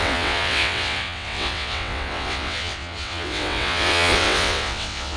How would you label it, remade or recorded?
remade